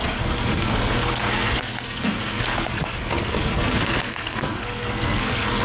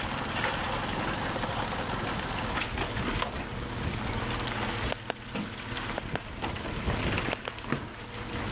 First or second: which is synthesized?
first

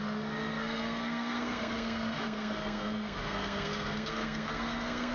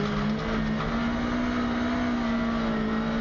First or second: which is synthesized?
first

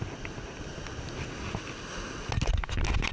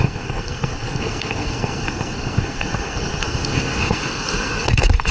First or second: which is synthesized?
second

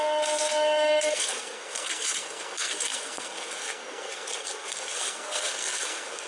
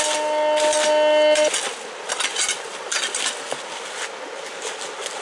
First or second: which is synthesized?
first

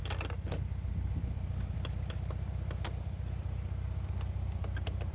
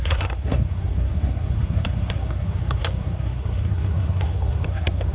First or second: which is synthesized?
second